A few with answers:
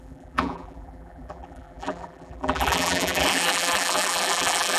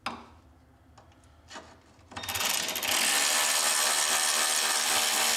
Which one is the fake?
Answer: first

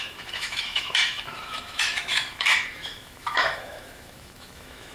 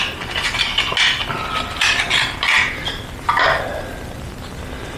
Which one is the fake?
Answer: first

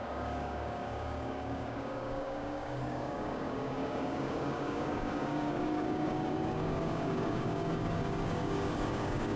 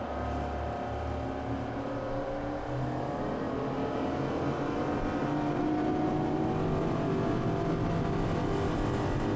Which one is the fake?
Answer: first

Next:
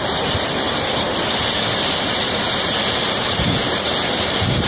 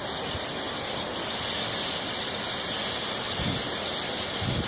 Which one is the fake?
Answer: first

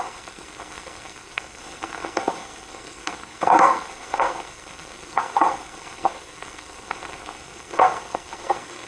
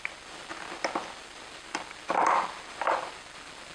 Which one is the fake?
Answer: first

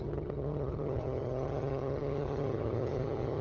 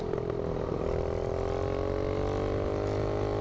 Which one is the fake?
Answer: first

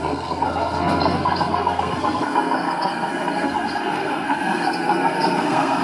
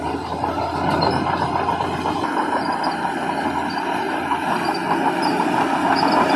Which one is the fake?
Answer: first